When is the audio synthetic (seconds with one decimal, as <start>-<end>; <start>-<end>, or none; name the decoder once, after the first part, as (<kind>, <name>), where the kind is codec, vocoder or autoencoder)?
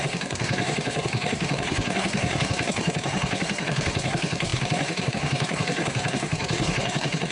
0.0-7.3 (codec, SNAC)